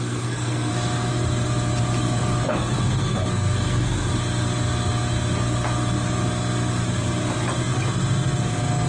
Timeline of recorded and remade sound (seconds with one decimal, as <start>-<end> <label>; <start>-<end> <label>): 0.0-0.7 remade; 0.7-2.5 recorded; 2.5-4.1 remade; 4.1-8.4 recorded; 8.4-8.9 remade